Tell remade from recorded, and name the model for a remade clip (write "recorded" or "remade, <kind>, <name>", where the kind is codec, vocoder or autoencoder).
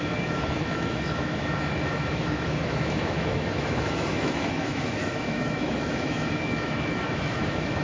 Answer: remade, autoencoder, DAC-VAE